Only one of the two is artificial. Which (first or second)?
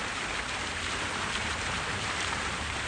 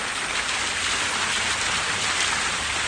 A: first